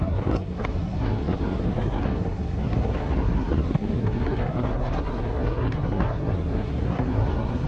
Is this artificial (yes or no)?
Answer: yes